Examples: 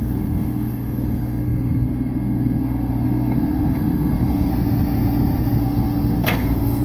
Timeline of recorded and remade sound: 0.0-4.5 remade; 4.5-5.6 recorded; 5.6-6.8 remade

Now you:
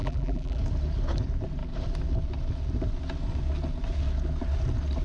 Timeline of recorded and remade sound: 0.0-0.6 remade; 0.6-5.0 recorded

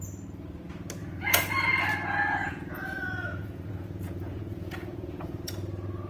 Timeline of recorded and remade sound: 0.0-1.0 recorded; 1.0-1.5 remade; 1.5-2.4 recorded; 2.4-5.5 remade; 5.5-6.1 recorded

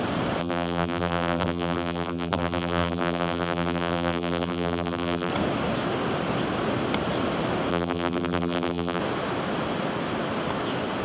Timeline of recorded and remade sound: 0.0-0.4 recorded; 0.4-5.3 remade; 5.3-7.7 recorded; 7.7-9.0 remade; 9.0-11.0 recorded

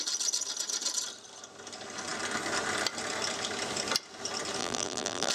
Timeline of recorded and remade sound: 0.0-4.6 recorded; 4.6-5.3 remade

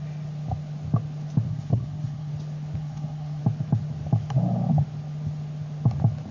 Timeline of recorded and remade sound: 0.0-1.5 recorded; 1.5-2.3 remade; 2.3-2.8 recorded; 2.8-3.4 remade; 3.4-6.3 recorded